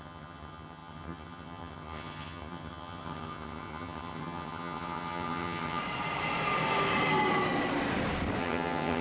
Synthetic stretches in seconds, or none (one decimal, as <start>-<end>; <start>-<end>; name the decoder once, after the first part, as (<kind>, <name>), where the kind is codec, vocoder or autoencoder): 0.0-5.8 (vocoder, HiFi-GAN); 8.4-9.0